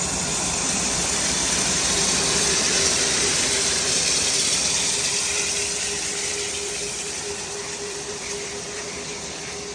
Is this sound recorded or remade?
remade